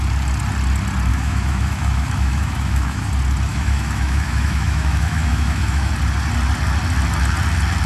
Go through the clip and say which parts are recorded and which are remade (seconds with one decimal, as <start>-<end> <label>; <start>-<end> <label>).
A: 0.0-1.1 recorded; 1.1-3.1 remade; 3.1-3.5 recorded; 3.5-5.9 remade; 5.9-7.9 recorded